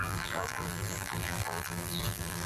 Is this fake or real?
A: fake